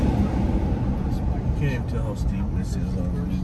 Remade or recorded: recorded